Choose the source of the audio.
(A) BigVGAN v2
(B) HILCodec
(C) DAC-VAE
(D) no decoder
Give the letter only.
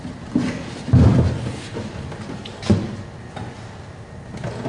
D